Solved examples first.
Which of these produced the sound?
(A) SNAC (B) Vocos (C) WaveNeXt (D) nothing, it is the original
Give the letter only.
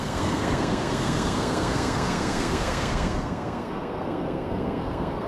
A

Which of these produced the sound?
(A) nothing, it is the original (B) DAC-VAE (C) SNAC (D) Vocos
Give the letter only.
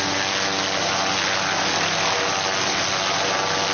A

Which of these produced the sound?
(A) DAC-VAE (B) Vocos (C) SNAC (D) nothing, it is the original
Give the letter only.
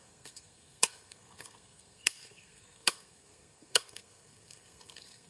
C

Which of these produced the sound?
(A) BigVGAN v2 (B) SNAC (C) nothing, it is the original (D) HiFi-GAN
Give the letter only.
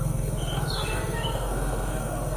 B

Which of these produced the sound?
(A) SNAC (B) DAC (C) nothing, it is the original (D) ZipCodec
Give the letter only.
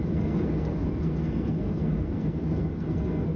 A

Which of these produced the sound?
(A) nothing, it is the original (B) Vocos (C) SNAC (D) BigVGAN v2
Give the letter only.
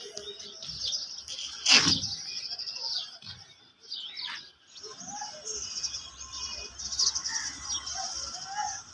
A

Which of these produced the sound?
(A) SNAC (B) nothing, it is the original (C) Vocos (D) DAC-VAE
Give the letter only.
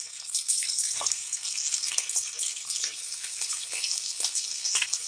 A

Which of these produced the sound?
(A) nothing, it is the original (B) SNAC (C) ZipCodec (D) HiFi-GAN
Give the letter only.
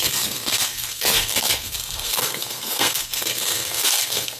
B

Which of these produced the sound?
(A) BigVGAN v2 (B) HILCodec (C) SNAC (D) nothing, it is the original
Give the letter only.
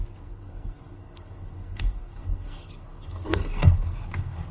C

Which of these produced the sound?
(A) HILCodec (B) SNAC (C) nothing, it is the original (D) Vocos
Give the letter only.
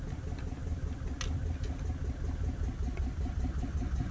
C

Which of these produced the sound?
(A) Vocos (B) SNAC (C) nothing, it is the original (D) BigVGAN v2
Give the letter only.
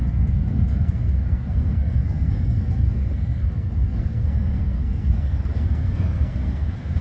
B